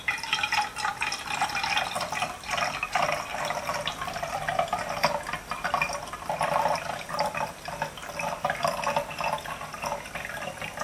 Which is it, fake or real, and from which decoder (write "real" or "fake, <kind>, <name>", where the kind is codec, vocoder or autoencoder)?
real